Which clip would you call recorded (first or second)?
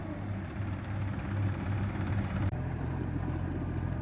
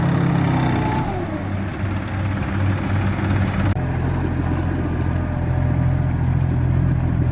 second